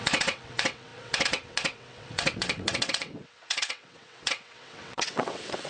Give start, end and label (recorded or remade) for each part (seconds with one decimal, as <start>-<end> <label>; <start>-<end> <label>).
0.0-5.7 remade